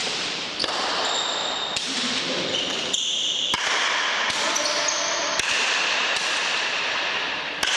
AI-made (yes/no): yes